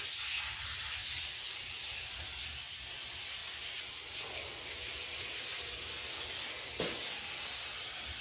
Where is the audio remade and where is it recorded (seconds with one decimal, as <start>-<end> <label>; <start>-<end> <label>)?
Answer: 0.0-8.2 recorded